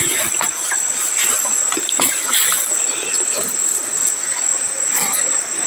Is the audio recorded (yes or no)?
yes